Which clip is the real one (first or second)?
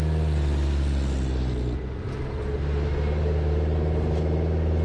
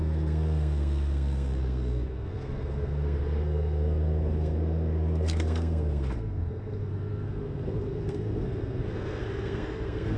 first